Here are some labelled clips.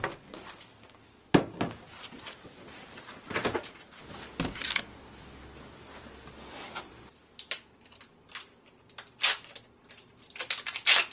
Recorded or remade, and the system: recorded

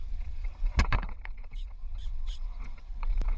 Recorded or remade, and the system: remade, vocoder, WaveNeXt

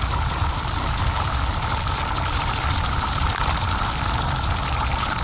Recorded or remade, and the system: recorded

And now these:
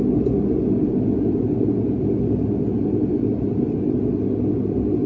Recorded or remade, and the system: recorded